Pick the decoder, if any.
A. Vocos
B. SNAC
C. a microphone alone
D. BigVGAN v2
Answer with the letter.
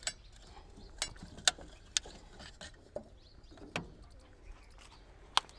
C